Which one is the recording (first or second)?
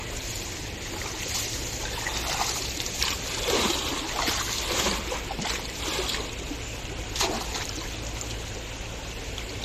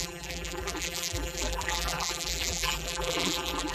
first